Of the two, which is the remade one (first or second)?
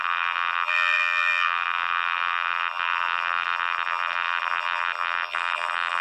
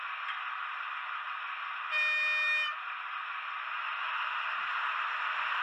first